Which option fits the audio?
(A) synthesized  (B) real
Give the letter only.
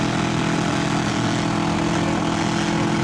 B